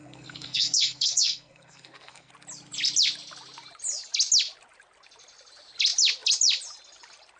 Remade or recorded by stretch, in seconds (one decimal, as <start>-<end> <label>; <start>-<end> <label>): 0.0-2.3 remade; 2.3-7.4 recorded